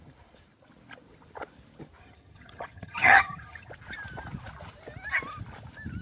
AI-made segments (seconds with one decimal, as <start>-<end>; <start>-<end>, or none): 2.0-3.7